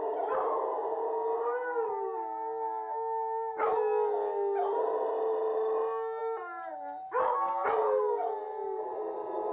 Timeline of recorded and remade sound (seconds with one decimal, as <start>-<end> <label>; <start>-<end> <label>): 0.0-9.5 recorded